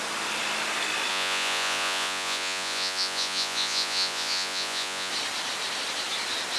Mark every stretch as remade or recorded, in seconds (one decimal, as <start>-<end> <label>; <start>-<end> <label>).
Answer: 0.0-1.1 recorded; 1.1-5.1 remade; 5.1-6.6 recorded